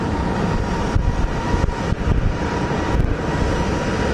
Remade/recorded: recorded